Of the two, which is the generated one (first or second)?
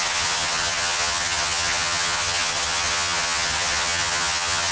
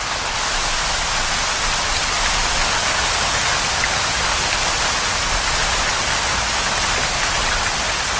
first